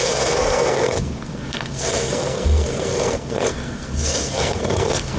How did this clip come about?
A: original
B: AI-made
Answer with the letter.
B